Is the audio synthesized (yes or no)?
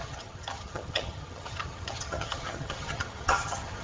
yes